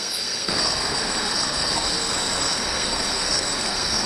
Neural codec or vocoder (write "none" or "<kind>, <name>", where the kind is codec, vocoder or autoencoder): codec, SNAC